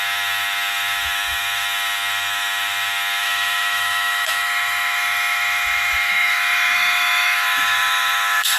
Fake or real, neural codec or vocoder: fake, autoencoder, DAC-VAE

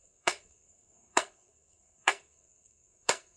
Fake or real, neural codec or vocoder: fake, codec, SNAC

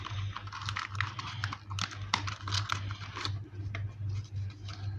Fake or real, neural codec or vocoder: real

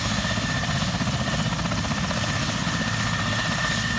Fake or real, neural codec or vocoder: real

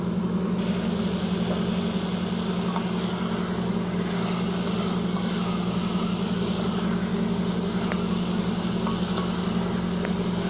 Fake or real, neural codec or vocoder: real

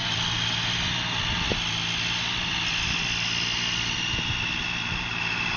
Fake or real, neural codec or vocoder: real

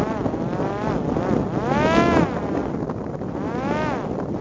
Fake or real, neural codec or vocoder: real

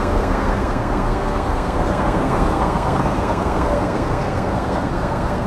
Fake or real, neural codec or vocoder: fake, codec, SNAC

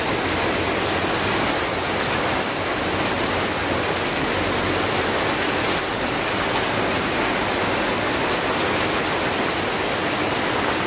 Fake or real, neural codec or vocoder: real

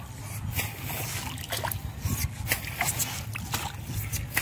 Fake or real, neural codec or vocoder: real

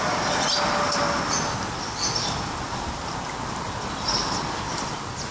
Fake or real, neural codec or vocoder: real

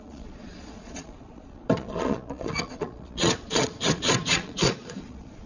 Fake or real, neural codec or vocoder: fake, vocoder, Vocos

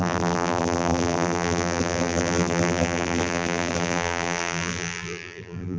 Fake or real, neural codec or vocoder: fake, vocoder, BigVGAN v2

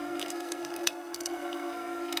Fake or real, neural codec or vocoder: fake, codec, SNAC